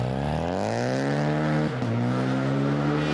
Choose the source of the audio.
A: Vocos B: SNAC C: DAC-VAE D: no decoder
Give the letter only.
D